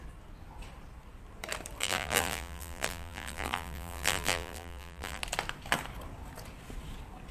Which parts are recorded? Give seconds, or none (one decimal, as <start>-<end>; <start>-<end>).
0.0-1.8; 5.2-7.3